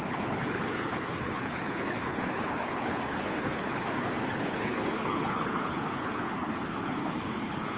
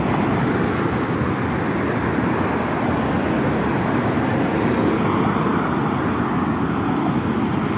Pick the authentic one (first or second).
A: second